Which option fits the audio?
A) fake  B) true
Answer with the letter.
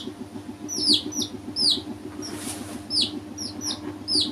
B